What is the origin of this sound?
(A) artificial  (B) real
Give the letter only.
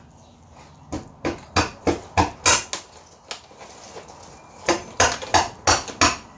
B